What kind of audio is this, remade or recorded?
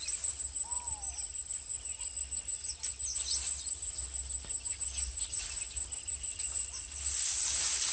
recorded